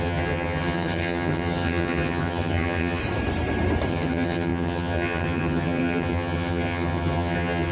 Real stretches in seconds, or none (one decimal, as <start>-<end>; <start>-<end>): 3.0-3.9